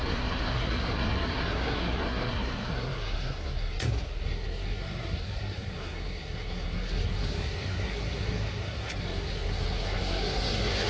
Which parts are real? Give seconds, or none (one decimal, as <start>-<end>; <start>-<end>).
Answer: none